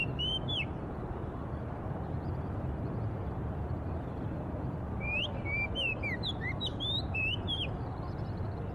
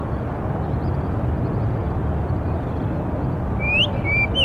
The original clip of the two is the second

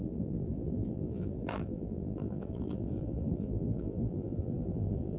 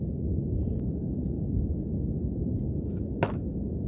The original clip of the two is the second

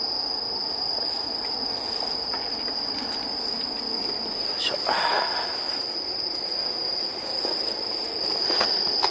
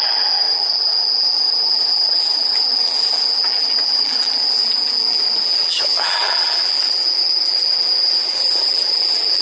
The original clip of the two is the first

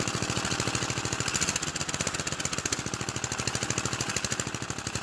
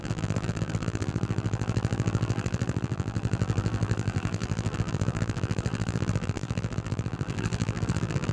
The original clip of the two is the first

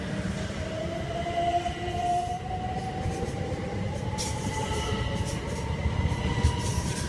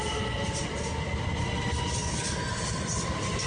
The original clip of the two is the second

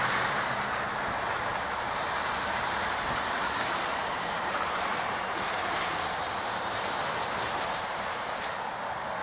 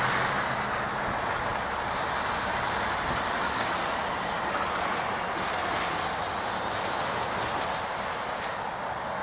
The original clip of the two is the second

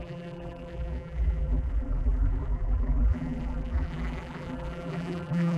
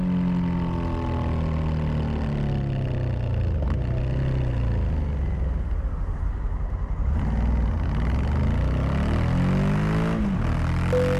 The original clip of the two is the second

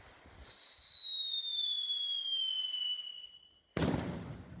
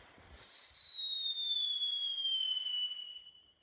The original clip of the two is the first